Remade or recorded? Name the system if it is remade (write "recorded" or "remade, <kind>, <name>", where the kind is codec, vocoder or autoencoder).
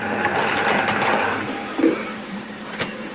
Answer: remade, vocoder, BigVGAN v2